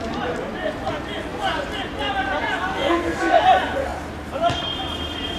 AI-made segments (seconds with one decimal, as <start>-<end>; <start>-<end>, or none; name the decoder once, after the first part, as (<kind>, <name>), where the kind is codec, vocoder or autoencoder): 2.7-3.4 (codec, SNAC)